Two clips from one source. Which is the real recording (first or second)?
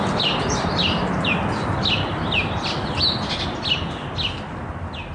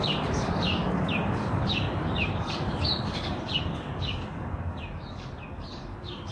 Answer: first